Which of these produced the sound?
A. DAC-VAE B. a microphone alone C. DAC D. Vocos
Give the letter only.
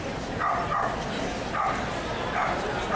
B